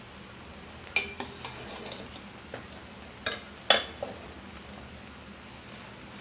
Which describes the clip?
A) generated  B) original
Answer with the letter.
B